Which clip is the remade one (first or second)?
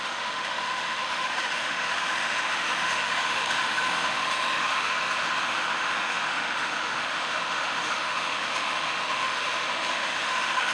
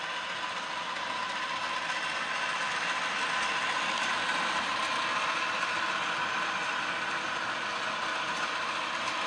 first